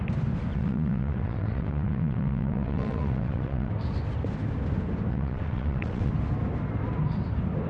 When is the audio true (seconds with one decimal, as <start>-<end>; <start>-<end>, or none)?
0.0-0.5; 3.7-5.1; 6.1-7.7